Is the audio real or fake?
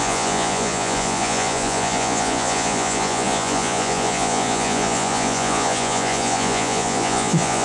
fake